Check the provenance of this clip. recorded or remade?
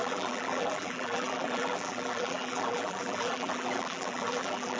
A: remade